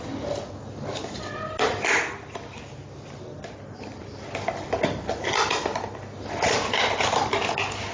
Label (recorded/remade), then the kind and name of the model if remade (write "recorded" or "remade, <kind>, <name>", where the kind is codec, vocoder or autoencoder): recorded